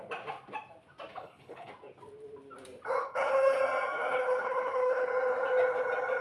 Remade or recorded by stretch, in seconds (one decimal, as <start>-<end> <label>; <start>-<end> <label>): 0.0-1.1 recorded; 1.1-1.7 remade; 1.7-3.0 recorded; 3.0-3.6 remade; 3.6-4.1 recorded; 4.1-5.1 remade; 5.1-6.2 recorded